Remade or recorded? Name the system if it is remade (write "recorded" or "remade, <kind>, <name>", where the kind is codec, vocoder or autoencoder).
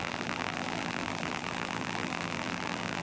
remade, vocoder, BigVGAN v2